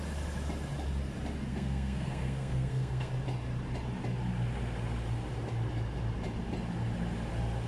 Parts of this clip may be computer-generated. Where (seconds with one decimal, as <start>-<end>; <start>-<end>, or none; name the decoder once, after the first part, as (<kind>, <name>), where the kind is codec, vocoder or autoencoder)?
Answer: 1.5-3.1 (codec, SNAC)